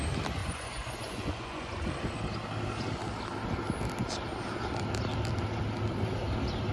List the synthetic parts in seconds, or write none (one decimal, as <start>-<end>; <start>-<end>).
0.4-1.9